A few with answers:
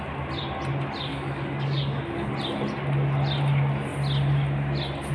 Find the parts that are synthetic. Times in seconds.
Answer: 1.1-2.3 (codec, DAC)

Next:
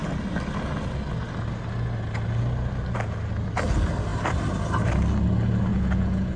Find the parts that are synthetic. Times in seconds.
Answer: 5.7-6.4 (vocoder, Vocos)

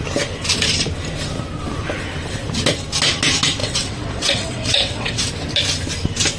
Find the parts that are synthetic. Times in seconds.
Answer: 3.6-5.3 (vocoder, WaveNeXt)

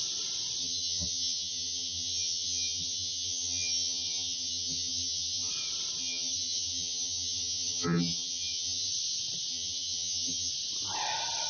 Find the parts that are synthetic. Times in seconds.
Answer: 0.6-5.5 (vocoder, HiFi-GAN); 6.0-8.9; 9.5-10.5

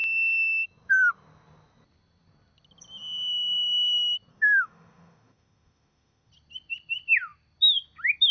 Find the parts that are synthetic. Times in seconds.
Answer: 4.3-6.3 (autoencoder, DAC-VAE)

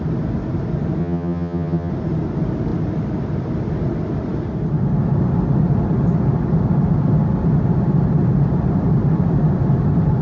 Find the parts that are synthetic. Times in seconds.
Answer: 1.0-1.9 (vocoder, HiFi-GAN)

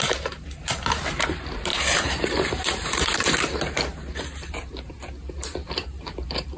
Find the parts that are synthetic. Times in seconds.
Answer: 0.0-4.9 (vocoder, BigVGAN v2); 5.8-6.6

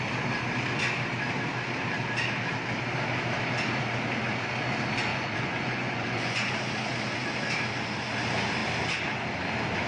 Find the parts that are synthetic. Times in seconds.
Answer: 5.1-6.5 (vocoder, Vocos)